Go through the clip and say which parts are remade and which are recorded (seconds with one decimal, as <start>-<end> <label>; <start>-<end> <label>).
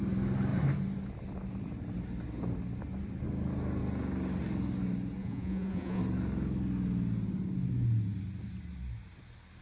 0.0-5.2 recorded; 5.2-6.0 remade; 6.0-9.6 recorded